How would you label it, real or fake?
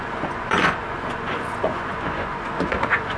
fake